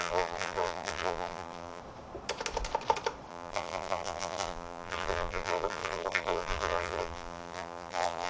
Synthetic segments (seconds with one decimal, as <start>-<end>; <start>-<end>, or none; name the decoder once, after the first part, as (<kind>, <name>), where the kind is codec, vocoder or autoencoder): 0.0-1.8 (vocoder, BigVGAN v2); 3.3-8.3